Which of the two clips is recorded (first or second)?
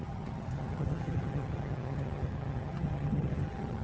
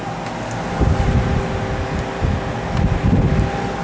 second